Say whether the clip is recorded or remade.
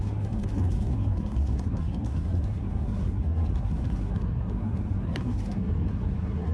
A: remade